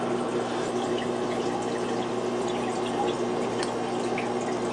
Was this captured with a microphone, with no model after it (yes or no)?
yes